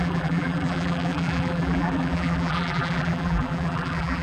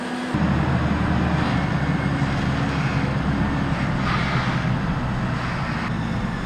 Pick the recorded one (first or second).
second